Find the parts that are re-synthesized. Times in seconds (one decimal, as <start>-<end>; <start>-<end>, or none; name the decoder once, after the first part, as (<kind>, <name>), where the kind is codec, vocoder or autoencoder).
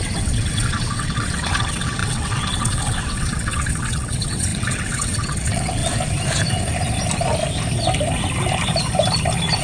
0.0-5.8 (vocoder, WaveNeXt)